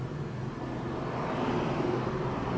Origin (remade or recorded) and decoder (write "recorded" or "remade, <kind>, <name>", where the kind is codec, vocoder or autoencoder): recorded